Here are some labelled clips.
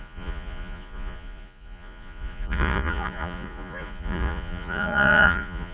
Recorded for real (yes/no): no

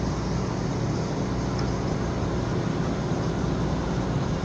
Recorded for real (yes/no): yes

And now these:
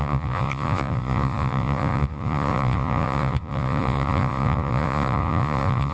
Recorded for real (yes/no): no